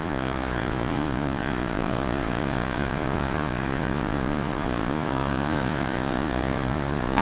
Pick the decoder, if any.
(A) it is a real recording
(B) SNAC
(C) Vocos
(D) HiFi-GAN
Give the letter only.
C